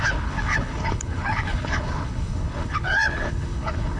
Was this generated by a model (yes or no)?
yes